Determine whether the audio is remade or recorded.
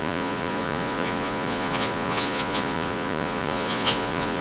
remade